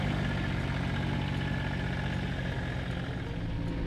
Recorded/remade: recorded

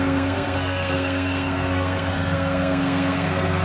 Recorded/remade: remade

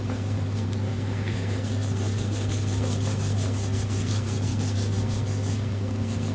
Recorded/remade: remade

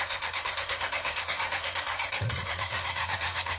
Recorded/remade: remade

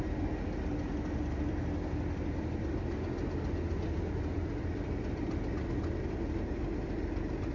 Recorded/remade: recorded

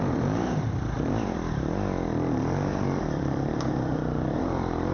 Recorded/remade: remade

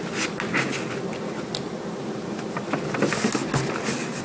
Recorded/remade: recorded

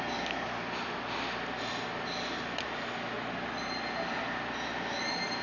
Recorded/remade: recorded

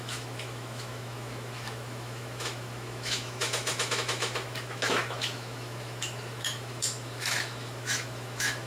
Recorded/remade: remade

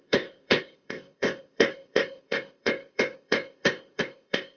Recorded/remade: remade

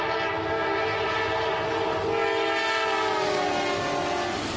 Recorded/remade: recorded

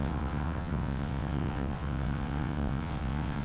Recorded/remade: remade